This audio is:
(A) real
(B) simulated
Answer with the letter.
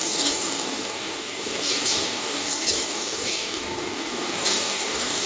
B